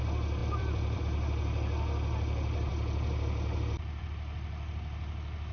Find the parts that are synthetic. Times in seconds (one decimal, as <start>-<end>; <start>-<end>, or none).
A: 0.4-1.0